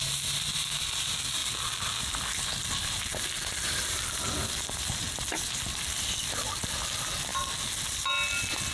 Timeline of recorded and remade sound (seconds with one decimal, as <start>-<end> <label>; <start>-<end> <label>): 0.0-8.7 recorded